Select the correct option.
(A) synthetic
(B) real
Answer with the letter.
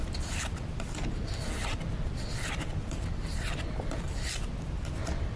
A